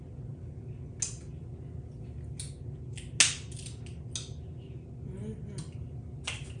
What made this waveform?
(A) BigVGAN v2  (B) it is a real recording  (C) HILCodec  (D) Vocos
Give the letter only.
B